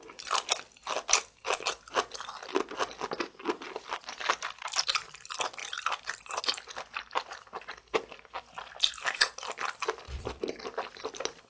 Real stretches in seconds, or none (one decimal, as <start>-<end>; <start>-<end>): 0.0-11.5